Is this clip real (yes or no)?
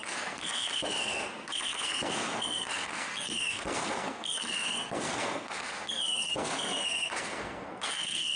no